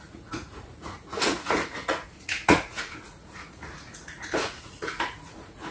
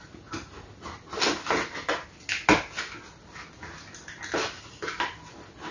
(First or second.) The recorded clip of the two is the second